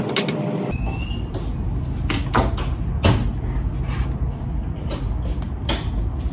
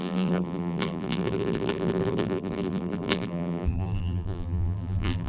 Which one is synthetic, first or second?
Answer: second